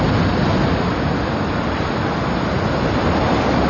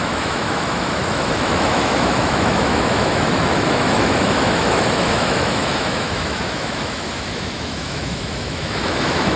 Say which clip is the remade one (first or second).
second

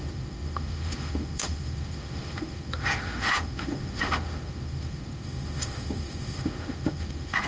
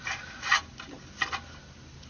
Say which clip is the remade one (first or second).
first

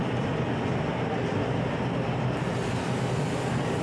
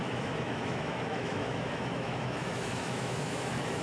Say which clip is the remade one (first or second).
second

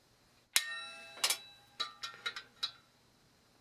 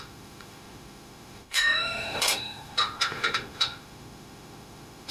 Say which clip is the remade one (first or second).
second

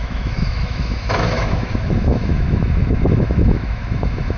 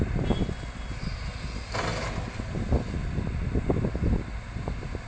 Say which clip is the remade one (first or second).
first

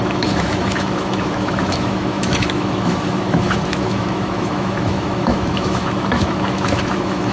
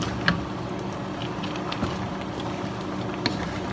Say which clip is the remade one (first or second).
first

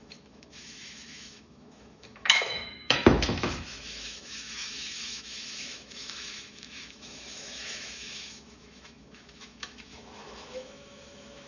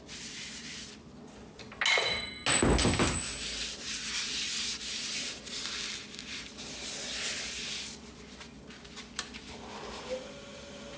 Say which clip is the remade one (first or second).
first